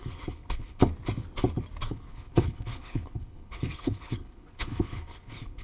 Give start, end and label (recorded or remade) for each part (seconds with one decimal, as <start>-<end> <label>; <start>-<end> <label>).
0.0-0.8 remade; 0.8-1.9 recorded; 1.9-5.6 remade